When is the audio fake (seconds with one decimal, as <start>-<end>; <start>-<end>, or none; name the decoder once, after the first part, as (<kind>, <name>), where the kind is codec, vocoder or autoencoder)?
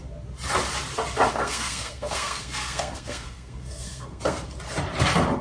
1.3-4.5 (codec, SNAC)